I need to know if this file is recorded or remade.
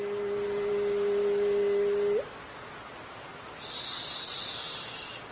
recorded